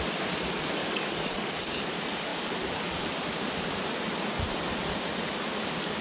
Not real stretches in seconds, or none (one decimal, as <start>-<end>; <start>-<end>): 0.8-1.5